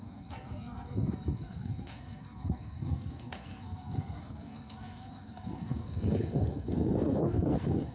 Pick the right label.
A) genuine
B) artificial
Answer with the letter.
B